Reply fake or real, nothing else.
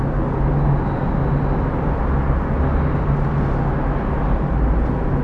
real